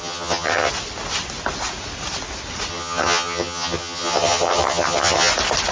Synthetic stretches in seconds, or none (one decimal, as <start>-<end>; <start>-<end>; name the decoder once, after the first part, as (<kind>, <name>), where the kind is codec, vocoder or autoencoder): 0.0-0.7 (vocoder, HiFi-GAN); 2.7-5.3